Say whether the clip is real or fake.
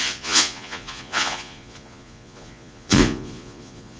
fake